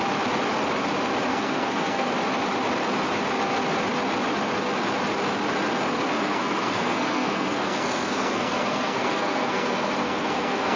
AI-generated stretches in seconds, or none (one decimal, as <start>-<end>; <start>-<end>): 1.3-2.1; 6.2-10.8